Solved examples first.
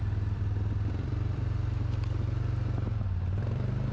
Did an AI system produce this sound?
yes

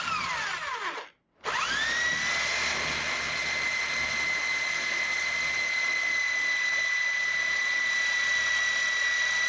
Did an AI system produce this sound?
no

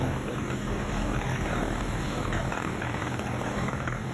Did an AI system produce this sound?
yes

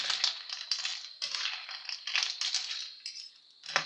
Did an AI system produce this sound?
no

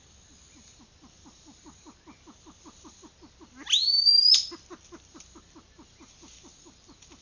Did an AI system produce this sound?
no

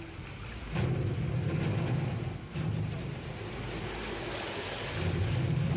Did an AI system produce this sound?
no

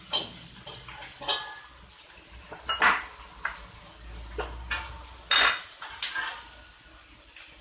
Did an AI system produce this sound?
no